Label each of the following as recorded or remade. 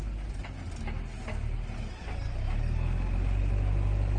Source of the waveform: recorded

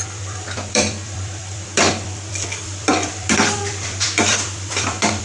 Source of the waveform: remade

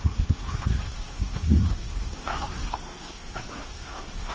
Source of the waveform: remade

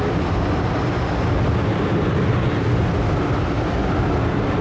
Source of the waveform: recorded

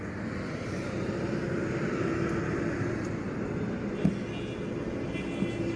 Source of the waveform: recorded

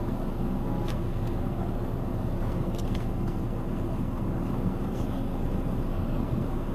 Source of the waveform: remade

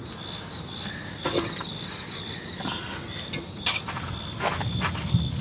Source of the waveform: recorded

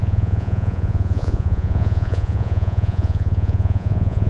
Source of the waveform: remade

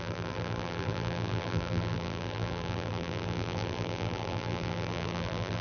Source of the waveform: remade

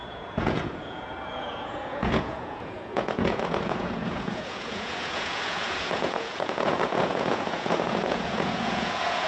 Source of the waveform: remade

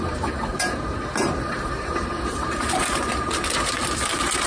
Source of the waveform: remade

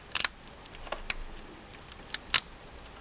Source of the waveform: recorded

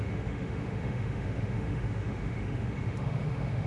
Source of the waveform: remade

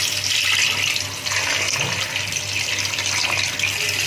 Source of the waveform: recorded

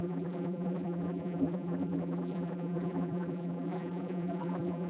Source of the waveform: remade